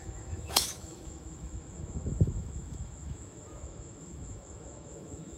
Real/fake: fake